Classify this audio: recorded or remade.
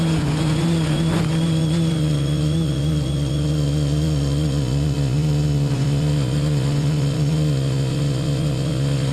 remade